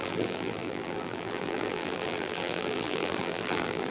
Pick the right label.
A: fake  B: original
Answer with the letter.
A